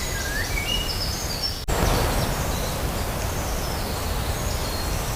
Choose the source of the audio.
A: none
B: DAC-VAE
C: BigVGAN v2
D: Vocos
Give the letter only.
A